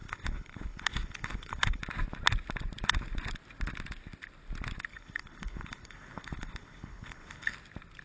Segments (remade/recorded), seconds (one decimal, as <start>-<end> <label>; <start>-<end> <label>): 0.0-1.8 remade; 1.8-4.9 recorded; 4.9-7.5 remade; 7.5-8.0 recorded

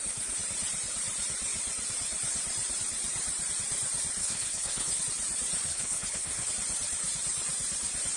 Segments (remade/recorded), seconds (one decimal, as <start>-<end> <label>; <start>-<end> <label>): 0.0-4.2 recorded; 4.2-5.0 remade; 5.0-5.7 recorded; 5.7-6.5 remade; 6.5-8.2 recorded

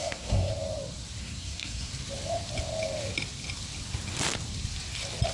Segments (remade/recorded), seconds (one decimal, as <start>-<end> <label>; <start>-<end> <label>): 0.0-0.5 remade; 0.5-1.2 recorded; 1.2-1.9 remade; 1.9-5.3 recorded

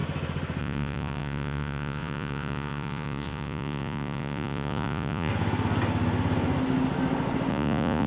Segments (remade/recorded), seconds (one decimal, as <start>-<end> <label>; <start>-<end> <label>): 0.0-0.6 recorded; 0.6-5.3 remade; 5.3-7.5 recorded; 7.5-8.1 remade

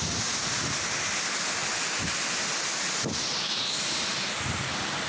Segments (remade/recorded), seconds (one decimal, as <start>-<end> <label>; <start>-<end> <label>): 0.0-5.1 recorded

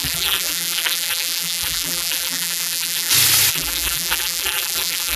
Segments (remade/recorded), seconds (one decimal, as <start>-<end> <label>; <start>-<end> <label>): 0.0-3.1 remade; 3.1-3.5 recorded; 3.5-5.2 remade

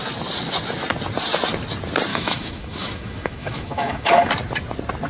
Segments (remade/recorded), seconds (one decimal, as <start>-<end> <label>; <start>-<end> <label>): 0.0-2.1 recorded; 2.1-4.3 remade; 4.3-5.1 recorded